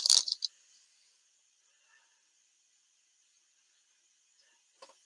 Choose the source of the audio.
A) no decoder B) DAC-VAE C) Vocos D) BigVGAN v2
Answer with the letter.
A